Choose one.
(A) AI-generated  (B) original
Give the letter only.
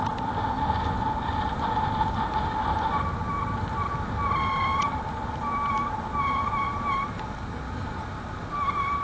B